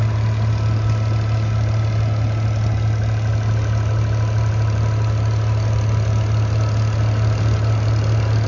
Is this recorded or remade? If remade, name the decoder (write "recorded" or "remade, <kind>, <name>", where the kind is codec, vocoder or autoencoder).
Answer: recorded